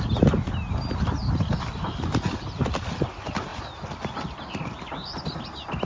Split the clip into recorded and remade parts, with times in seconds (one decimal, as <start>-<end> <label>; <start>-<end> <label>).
0.0-1.2 recorded; 1.2-1.7 remade; 1.7-5.8 recorded